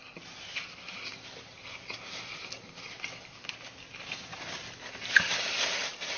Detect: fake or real real